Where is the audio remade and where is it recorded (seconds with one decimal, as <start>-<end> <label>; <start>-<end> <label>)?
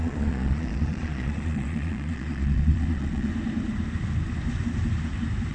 0.0-3.3 remade; 3.3-5.5 recorded